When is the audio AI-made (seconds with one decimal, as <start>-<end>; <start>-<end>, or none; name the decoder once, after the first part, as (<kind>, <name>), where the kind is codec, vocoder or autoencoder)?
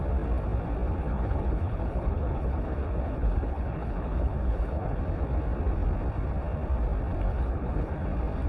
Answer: 1.0-5.0 (codec, HILCodec); 7.3-7.9